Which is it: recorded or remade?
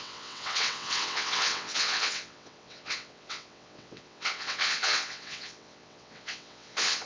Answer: remade